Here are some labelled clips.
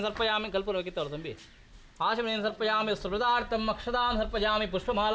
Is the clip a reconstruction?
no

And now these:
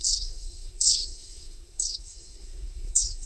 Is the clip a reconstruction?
yes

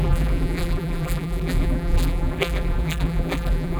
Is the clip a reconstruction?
yes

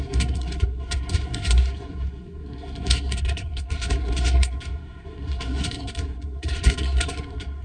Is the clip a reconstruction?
yes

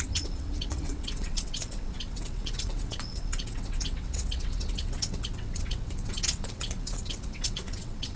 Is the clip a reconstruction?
yes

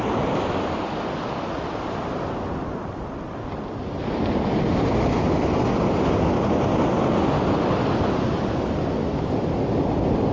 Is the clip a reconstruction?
no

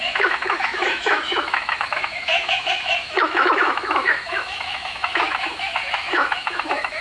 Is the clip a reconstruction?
yes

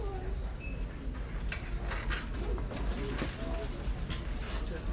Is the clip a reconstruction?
no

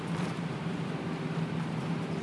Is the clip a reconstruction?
yes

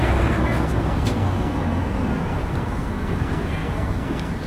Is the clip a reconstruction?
yes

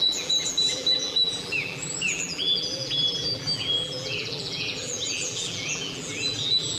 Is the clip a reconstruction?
yes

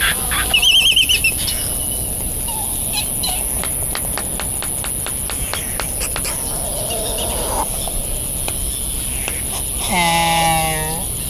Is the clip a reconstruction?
no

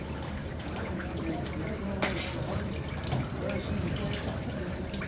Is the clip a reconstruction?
no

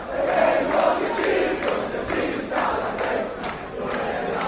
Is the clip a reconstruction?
no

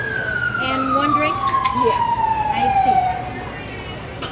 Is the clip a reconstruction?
no